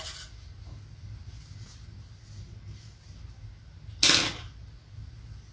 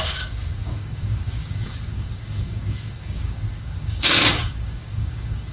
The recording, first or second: first